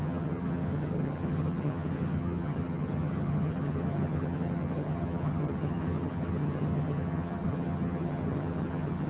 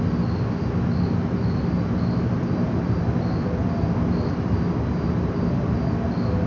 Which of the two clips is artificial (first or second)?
first